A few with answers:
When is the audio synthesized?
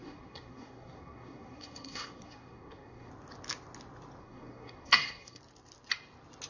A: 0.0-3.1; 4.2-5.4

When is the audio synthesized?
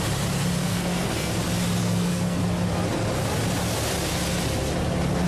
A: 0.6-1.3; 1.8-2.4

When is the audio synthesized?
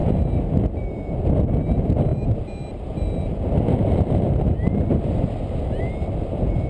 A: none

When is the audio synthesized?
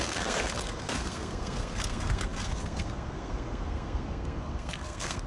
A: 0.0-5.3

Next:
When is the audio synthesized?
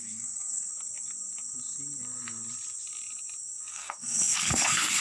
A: 0.0-0.7; 3.7-5.0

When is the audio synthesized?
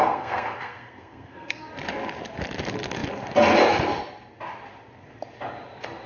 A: 0.0-1.7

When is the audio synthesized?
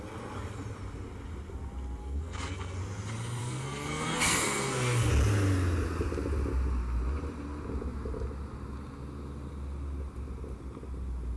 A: 2.0-2.8; 3.4-5.1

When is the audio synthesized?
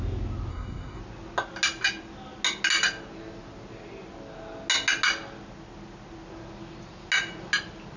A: 0.5-1.0